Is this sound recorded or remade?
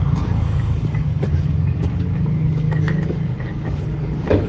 remade